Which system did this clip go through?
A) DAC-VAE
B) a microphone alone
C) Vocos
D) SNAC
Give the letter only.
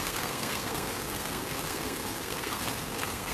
D